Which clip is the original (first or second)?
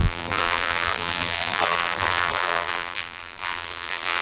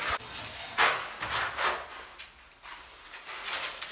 second